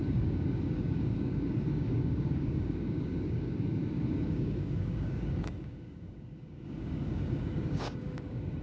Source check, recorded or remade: remade